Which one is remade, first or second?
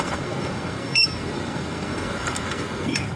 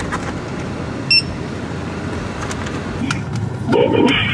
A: first